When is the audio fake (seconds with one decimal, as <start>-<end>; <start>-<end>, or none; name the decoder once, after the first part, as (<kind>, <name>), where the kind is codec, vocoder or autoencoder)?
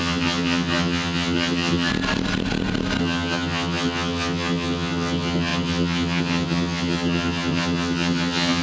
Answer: 0.0-1.9 (vocoder, HiFi-GAN); 3.0-8.6